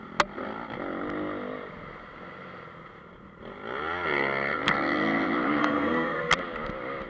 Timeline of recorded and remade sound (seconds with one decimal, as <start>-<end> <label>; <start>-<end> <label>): 0.0-5.6 recorded; 5.6-6.3 remade; 6.3-7.1 recorded